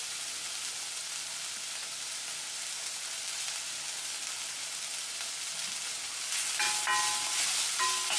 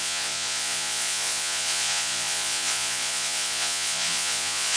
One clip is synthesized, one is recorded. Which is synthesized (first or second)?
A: second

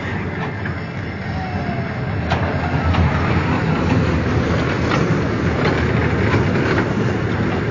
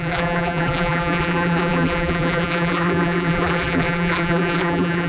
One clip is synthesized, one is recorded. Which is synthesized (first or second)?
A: second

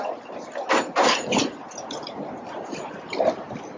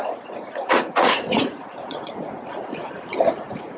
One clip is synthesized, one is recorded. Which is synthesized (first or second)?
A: second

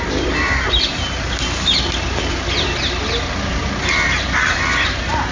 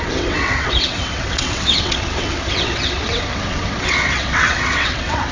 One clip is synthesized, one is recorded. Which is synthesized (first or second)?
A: second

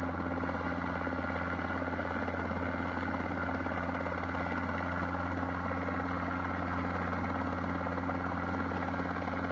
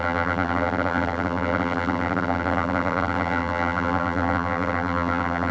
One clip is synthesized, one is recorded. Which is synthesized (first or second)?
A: second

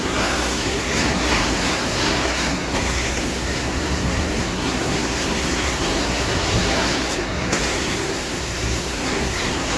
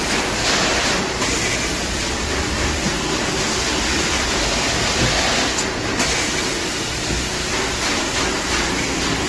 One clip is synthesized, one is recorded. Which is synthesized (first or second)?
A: first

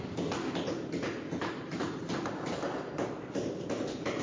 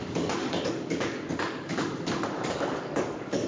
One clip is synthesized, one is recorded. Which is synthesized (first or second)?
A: second